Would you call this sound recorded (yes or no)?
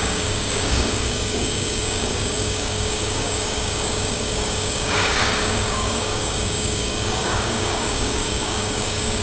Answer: no